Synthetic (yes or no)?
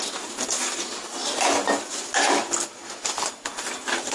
no